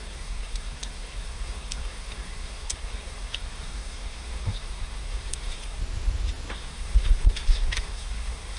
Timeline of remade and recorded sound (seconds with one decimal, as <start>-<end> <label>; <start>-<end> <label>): 0.0-5.8 remade; 5.8-6.5 recorded; 6.5-8.6 remade